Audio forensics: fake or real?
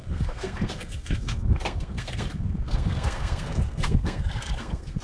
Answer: fake